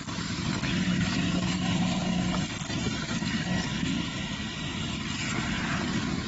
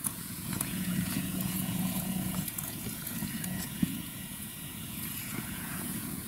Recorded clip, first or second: first